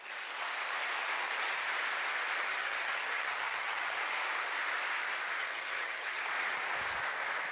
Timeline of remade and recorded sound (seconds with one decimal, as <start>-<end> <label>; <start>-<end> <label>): 0.0-2.5 recorded; 2.5-4.0 remade; 4.0-5.4 recorded; 5.4-6.2 remade; 6.2-7.5 recorded